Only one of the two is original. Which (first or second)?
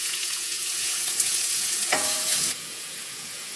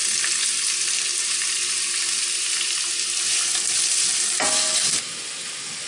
second